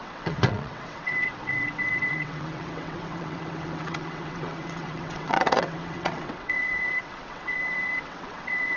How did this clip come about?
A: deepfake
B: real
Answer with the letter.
A